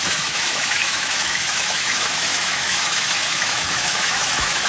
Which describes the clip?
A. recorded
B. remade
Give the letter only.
B